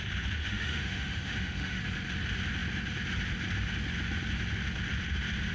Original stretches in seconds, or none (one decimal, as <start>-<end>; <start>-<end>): 0.0-0.4; 1.8-5.5